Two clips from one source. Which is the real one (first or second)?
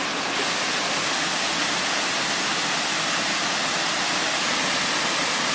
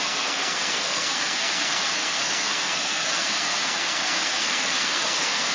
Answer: first